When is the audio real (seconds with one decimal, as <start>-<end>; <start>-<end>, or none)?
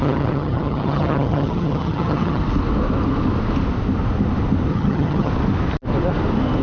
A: 2.4-4.7; 5.3-6.6